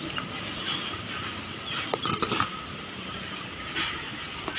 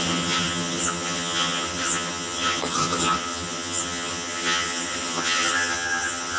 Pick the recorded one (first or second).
first